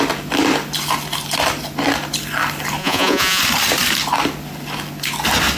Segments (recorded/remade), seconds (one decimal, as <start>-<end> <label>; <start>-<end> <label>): 0.0-2.8 recorded; 2.8-3.4 remade; 3.4-5.6 recorded